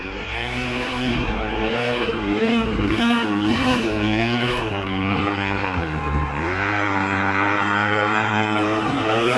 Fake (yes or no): yes